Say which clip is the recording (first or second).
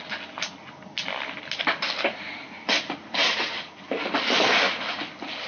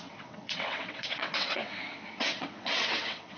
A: first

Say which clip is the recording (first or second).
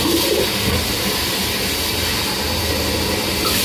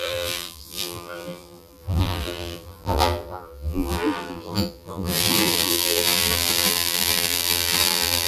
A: first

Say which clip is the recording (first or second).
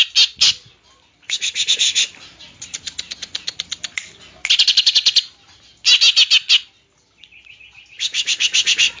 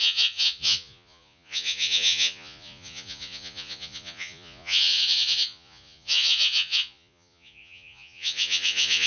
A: first